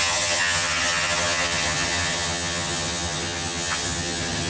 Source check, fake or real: fake